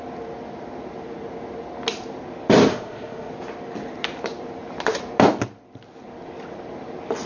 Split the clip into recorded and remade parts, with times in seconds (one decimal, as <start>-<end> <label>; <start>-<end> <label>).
0.0-2.7 recorded; 2.7-3.3 remade; 3.3-7.3 recorded